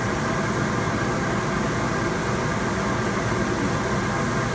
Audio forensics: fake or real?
real